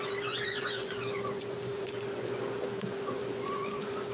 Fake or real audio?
fake